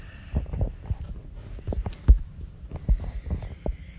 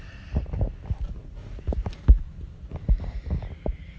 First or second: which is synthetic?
first